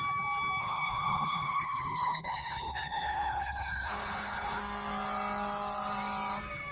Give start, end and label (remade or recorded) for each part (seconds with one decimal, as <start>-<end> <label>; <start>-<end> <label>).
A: 0.0-0.6 recorded; 0.6-4.6 remade; 4.6-6.7 recorded